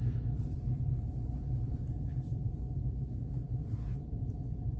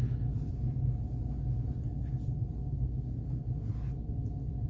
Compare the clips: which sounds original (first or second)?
second